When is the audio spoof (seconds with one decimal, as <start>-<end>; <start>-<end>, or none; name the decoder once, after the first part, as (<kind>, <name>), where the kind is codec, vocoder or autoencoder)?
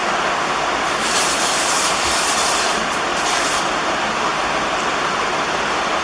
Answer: 1.0-4.3 (vocoder, BigVGAN v2); 4.9-6.0